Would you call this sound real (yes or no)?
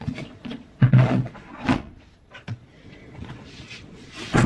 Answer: no